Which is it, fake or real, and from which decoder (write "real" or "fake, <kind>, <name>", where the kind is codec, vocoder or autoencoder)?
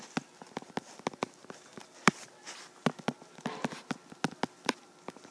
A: real